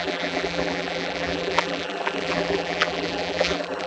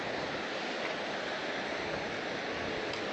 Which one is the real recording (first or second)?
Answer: second